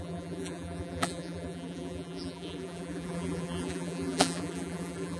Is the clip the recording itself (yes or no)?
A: no